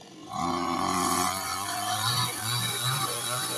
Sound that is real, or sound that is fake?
fake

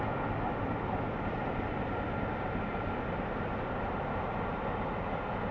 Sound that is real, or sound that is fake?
real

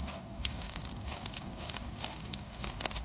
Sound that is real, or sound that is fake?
fake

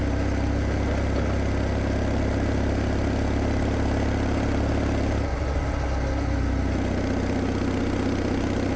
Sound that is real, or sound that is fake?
real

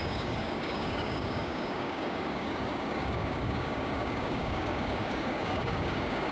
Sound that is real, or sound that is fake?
fake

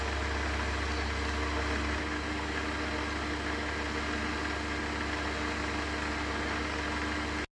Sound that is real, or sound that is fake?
real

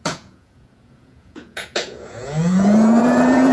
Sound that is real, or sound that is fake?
fake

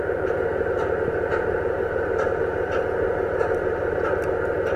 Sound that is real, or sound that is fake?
real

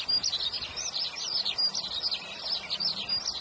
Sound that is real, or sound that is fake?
real